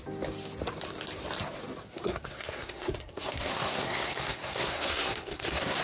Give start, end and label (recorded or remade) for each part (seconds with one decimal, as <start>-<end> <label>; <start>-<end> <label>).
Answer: 0.0-1.9 recorded; 1.9-5.8 remade